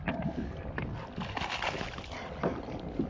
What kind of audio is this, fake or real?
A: real